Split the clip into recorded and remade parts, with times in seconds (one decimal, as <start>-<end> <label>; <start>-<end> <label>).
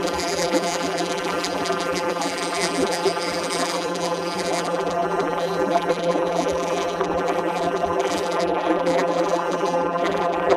0.0-10.6 remade